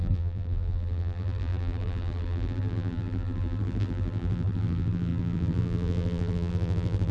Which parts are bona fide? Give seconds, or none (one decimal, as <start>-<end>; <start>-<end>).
none